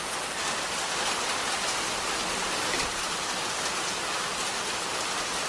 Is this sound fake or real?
real